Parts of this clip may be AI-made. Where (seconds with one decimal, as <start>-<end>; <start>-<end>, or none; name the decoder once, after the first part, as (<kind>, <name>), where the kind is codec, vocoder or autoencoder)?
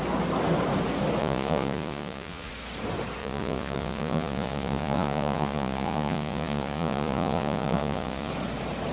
1.2-2.5 (vocoder, Vocos); 3.2-8.3